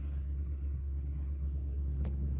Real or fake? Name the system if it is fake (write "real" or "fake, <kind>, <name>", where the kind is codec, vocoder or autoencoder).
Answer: fake, codec, SNAC